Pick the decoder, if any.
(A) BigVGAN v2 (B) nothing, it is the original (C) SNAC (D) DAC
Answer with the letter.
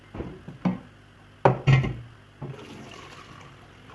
B